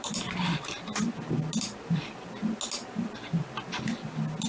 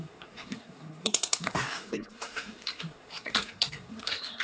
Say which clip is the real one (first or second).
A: first